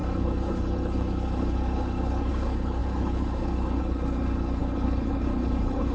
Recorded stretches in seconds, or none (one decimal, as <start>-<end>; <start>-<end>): none